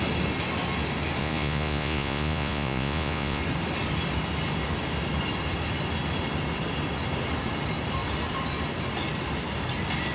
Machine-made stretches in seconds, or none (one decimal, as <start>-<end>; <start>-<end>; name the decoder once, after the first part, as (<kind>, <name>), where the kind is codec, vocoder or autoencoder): 1.2-3.4 (vocoder, Vocos)